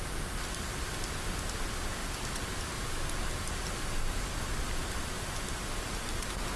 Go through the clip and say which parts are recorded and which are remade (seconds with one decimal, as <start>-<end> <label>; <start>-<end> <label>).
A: 0.0-6.6 recorded